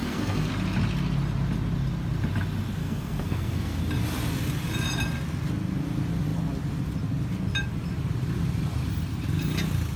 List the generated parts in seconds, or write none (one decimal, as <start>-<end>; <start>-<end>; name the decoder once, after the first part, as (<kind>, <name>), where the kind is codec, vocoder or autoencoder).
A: 0.0-0.5 (codec, SNAC); 2.8-3.8

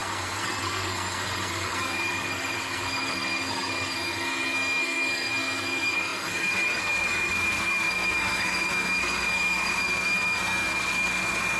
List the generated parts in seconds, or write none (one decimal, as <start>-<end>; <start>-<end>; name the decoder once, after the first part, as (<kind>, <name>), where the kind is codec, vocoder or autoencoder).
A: 0.0-11.6 (codec, SNAC)

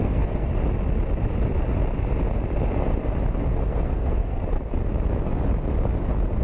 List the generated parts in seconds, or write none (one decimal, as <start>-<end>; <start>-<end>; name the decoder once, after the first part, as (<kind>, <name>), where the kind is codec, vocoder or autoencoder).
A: 0.0-0.5 (codec, SNAC); 3.5-4.4

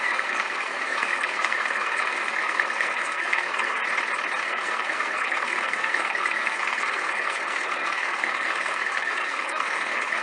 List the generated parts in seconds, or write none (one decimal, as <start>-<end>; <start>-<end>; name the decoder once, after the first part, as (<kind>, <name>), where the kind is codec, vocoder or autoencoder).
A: 0.0-3.8 (codec, SNAC); 4.4-10.2

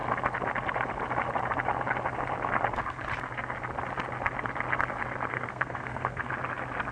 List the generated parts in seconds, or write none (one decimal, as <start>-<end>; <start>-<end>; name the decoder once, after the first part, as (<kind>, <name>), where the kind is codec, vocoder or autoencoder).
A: 5.3-6.3 (codec, SNAC)

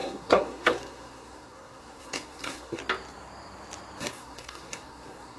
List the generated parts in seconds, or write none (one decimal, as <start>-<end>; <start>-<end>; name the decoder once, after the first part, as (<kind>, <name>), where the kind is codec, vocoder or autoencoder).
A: 0.0-2.8 (codec, SNAC); 4.0-5.4

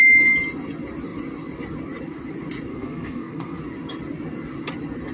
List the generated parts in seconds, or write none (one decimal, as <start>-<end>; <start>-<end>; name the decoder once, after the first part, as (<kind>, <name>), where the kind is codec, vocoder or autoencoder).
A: 2.7-3.6 (codec, SNAC)

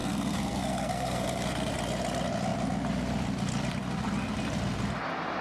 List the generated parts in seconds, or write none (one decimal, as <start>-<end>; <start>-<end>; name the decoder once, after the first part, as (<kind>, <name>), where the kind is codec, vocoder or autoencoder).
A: 0.0-1.7 (codec, SNAC)